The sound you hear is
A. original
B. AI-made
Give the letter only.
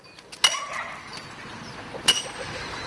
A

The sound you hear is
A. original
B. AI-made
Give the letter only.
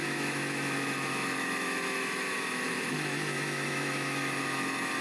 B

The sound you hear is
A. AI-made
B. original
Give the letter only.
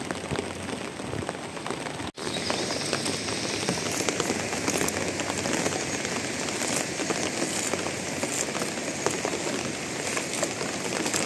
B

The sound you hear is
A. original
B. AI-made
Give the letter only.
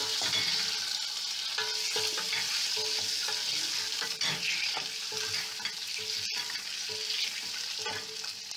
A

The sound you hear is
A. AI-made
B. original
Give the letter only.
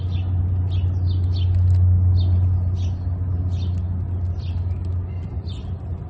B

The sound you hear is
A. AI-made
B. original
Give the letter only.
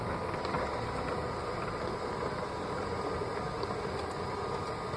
B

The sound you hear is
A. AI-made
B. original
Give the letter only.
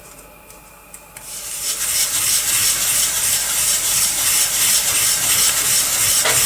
B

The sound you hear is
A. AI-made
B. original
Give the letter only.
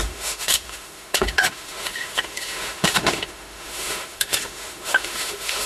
A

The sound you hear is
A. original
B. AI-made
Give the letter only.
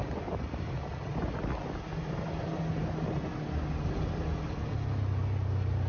A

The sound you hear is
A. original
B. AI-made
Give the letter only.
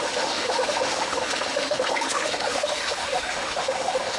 B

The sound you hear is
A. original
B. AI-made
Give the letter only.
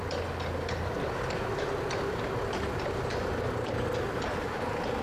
A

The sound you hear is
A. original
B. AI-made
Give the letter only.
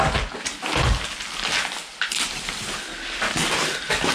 A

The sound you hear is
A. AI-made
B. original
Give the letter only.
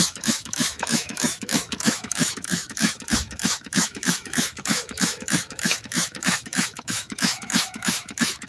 A